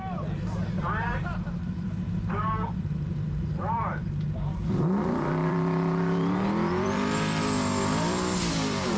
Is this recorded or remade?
remade